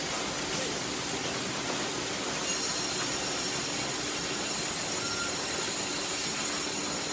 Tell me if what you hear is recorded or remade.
recorded